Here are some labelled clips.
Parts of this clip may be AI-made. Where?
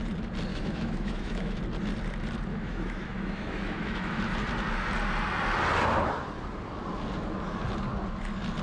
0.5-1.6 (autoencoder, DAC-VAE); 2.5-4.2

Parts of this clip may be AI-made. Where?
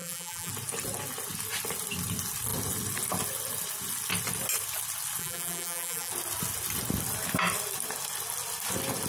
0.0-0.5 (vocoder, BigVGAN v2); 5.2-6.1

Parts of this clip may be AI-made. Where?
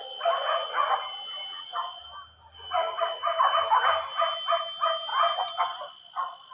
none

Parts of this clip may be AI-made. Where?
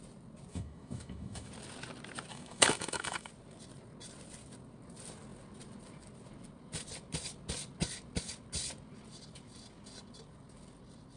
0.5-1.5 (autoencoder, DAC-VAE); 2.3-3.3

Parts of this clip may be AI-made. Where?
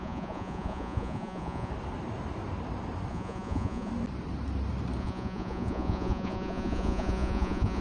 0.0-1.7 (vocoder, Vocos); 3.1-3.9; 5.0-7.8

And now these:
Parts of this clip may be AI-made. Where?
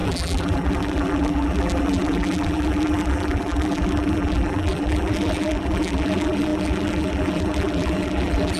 0.0-8.6 (vocoder, BigVGAN v2)